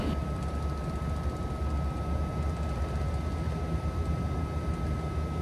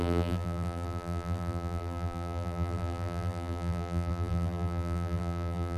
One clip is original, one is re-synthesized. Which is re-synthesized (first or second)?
second